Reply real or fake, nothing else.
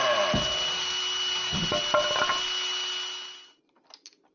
real